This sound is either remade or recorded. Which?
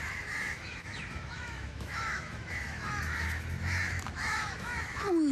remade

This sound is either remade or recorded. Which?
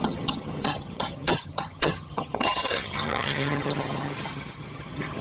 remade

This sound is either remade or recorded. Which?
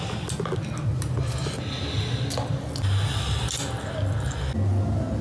recorded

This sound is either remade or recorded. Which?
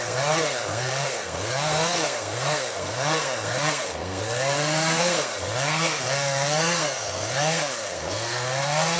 remade